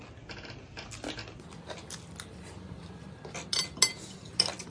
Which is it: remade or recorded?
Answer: recorded